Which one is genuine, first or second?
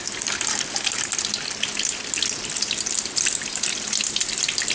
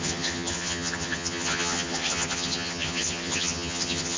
first